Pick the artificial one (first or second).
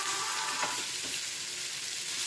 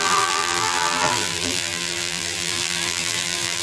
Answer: second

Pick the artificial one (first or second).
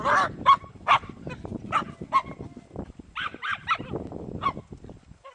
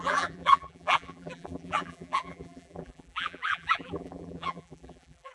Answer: second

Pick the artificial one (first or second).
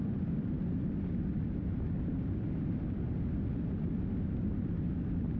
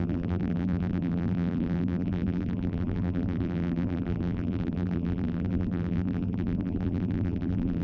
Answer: second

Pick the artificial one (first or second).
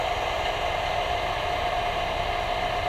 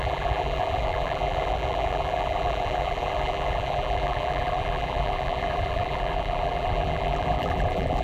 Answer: second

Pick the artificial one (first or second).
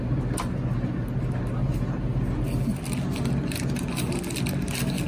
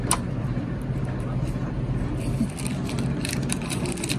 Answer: second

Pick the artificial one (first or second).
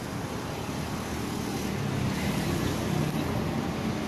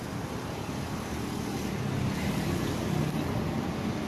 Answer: second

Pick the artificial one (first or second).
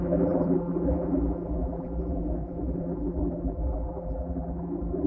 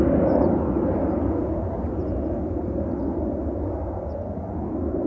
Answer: first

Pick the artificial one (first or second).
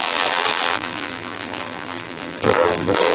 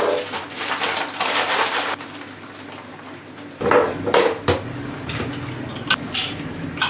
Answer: first